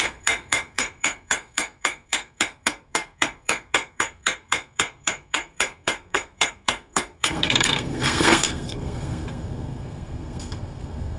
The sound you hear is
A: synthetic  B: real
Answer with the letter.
A